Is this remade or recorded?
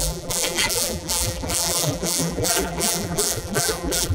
remade